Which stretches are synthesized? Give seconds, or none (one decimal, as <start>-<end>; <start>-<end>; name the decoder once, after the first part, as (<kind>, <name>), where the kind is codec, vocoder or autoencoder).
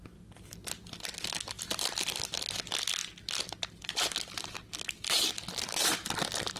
none